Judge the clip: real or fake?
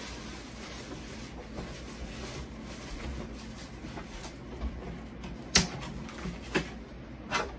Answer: real